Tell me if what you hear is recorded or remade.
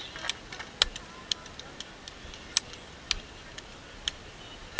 recorded